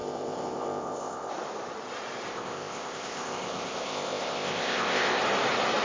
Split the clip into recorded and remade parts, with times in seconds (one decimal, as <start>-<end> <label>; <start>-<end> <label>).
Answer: 0.0-1.3 remade; 1.3-2.3 recorded; 2.3-5.2 remade; 5.2-5.8 recorded